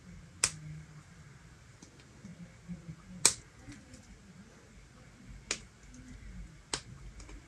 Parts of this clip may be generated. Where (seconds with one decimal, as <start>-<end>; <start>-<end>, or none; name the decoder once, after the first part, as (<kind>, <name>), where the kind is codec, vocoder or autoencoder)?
none